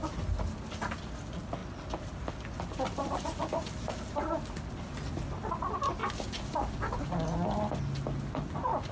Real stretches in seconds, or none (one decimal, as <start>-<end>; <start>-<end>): 0.0-8.9